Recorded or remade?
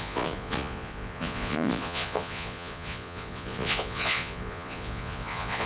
remade